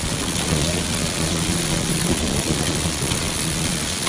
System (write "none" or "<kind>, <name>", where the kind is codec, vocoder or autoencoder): vocoder, Vocos